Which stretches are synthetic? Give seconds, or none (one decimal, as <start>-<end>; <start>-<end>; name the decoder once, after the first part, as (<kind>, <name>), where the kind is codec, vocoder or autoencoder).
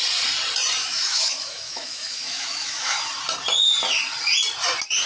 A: 0.8-3.1 (autoencoder, DAC-VAE)